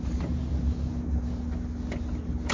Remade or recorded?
recorded